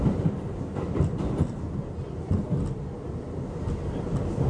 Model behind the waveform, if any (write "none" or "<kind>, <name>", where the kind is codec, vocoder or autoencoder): none